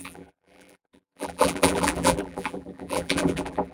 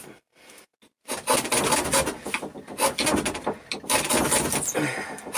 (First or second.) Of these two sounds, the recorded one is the second